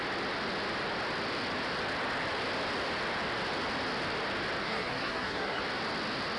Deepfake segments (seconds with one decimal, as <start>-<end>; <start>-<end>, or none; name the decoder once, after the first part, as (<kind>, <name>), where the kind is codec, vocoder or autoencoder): 4.6-5.6 (codec, SNAC)